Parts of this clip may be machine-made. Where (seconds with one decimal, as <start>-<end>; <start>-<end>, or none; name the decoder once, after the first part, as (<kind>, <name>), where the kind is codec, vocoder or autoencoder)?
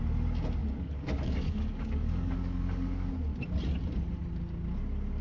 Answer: 0.6-3.1 (codec, DAC)